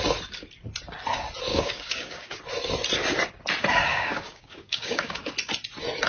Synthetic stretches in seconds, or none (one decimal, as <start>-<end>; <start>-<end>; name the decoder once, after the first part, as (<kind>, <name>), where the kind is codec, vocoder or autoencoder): 1.5-2.4 (codec, DAC); 3.9-5.3